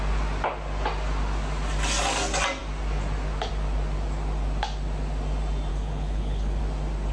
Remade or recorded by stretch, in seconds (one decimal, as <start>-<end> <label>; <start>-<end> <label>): 0.0-5.7 recorded; 5.7-6.6 remade; 6.6-7.1 recorded